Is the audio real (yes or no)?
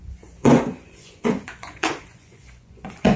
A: no